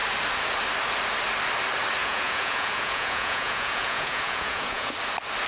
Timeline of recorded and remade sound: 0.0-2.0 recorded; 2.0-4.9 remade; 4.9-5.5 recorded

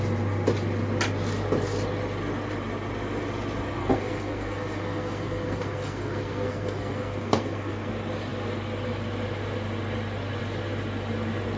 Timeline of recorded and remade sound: 0.0-3.8 recorded; 3.8-7.9 remade; 7.9-11.6 recorded

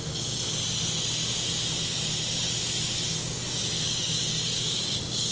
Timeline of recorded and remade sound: 0.0-3.2 recorded; 3.2-5.3 remade

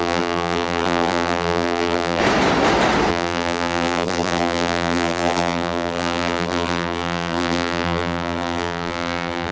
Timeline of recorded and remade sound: 0.0-2.2 remade; 2.2-3.1 recorded; 3.1-9.5 remade

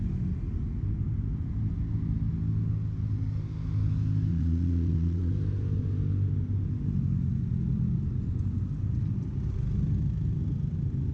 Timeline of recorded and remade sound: 0.0-4.3 recorded; 4.3-5.3 remade; 5.3-11.1 recorded